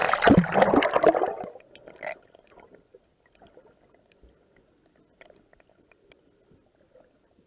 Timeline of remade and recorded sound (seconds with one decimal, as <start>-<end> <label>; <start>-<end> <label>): 0.0-7.5 recorded